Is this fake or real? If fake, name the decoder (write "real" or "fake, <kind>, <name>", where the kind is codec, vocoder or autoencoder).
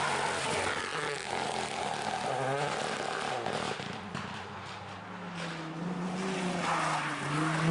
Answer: real